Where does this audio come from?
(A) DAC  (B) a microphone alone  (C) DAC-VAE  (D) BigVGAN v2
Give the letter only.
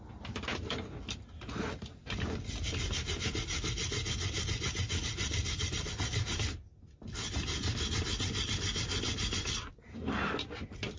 B